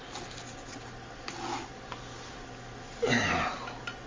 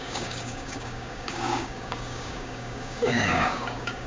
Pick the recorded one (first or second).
first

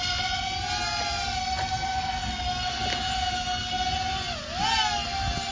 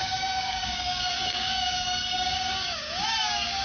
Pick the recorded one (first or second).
first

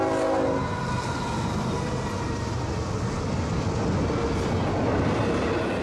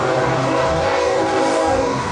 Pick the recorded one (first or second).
first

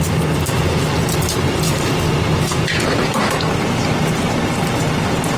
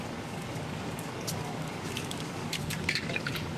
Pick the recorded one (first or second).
first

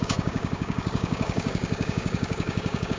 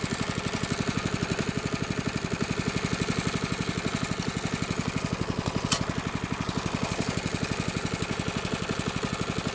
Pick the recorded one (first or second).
second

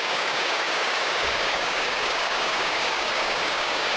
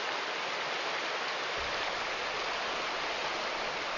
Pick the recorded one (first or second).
second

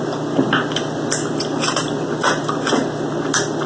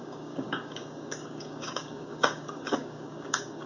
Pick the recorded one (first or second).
first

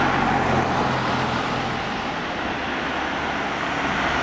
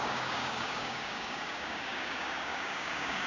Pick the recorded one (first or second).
first